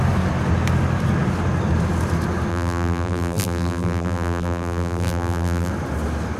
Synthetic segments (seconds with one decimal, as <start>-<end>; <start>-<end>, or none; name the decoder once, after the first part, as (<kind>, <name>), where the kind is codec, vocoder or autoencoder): 2.5-5.7 (vocoder, BigVGAN v2)